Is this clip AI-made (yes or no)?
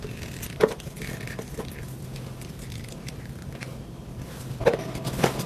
no